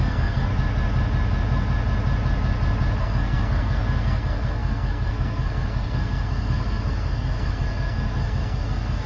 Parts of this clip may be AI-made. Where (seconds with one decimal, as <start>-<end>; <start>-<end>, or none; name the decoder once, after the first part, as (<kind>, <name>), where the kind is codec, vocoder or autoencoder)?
0.0-0.5 (codec, SNAC); 3.0-9.1